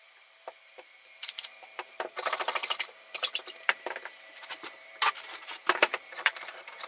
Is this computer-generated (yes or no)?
yes